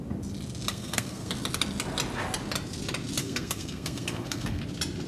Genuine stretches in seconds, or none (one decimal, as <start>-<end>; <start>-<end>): 0.0-0.7; 1.3-3.2; 4.6-5.1

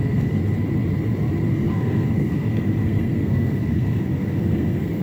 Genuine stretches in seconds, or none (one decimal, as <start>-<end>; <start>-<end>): 0.4-1.5

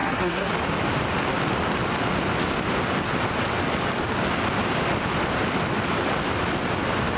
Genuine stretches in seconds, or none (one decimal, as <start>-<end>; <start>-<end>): 0.5-7.2

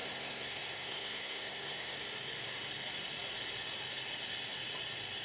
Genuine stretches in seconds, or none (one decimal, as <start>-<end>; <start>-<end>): 2.0-5.2